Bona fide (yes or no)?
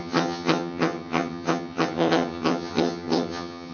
no